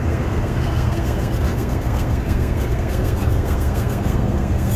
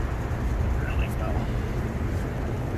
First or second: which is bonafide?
second